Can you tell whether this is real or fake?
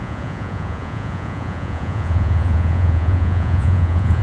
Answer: fake